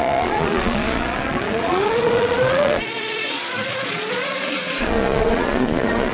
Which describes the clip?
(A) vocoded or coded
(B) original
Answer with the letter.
A